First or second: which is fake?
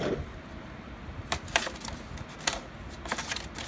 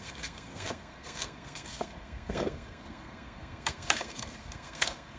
second